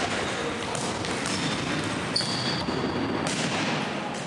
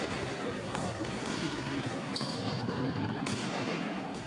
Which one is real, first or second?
first